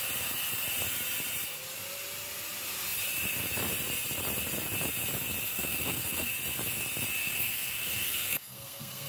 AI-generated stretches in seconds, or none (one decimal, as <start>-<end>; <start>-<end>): 5.5-6.3; 7.2-9.1